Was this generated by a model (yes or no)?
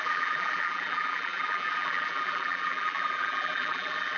yes